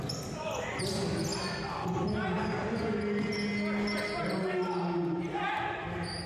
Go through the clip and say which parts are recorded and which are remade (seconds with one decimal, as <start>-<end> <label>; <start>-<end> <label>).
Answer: 0.0-6.3 recorded